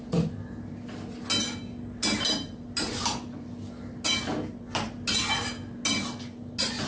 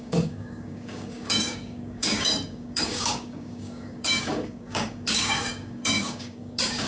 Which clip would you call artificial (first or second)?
second